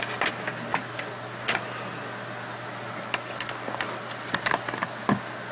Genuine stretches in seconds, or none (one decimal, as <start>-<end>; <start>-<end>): 0.0-5.5